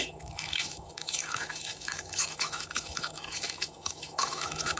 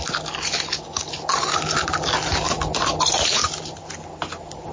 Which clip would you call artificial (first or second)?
first